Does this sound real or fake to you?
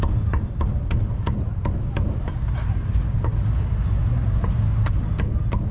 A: real